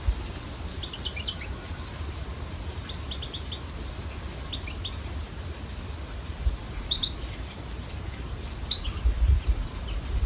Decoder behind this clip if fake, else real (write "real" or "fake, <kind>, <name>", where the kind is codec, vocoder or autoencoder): real